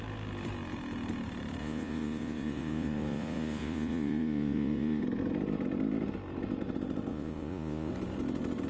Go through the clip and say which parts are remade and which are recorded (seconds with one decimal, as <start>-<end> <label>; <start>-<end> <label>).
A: 0.0-1.6 recorded; 1.6-5.0 remade; 5.0-7.1 recorded; 7.1-7.9 remade; 7.9-8.7 recorded